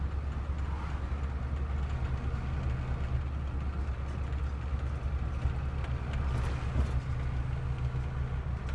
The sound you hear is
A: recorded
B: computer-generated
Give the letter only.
A